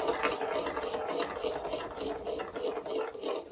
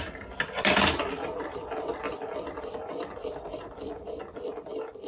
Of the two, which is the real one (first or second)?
first